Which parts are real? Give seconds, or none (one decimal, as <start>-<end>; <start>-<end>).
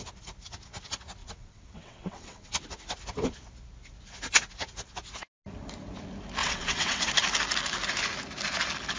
0.0-1.2; 2.5-6.4; 7.1-9.0